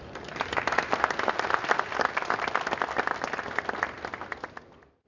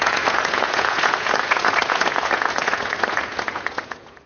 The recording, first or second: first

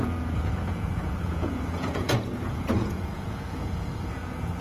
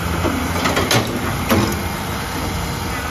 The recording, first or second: second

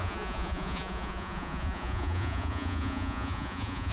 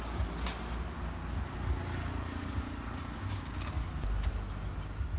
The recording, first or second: second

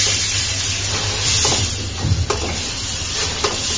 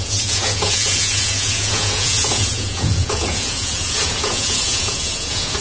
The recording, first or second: first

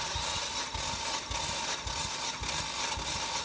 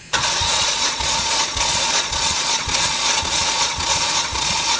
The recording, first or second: first